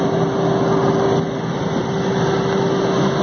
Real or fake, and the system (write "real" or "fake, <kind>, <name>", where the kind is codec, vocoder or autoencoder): real